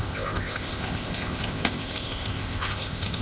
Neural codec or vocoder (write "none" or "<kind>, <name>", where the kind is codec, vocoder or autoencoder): codec, ZipCodec